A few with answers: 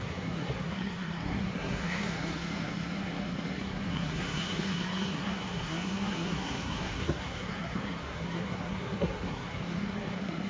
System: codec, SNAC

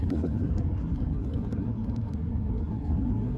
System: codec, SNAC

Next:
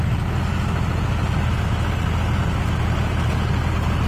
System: none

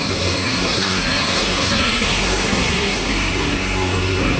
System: codec, SNAC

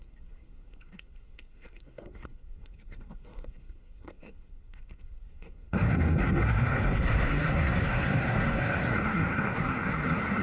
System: codec, SNAC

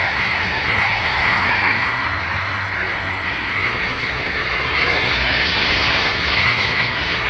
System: codec, SNAC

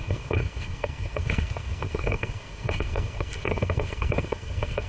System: codec, SNAC